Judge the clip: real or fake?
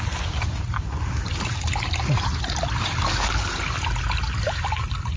real